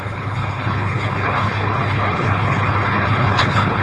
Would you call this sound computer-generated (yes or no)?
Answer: yes